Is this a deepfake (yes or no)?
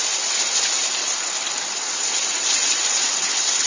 no